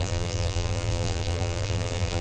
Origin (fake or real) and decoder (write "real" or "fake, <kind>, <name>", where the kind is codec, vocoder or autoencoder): fake, vocoder, BigVGAN v2